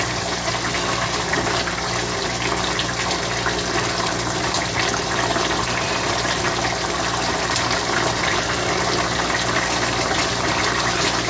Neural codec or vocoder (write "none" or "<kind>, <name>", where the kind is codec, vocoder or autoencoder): none